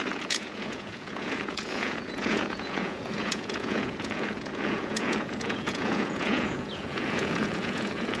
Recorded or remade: remade